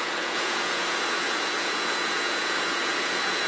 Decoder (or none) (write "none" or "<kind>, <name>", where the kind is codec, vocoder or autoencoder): vocoder, Vocos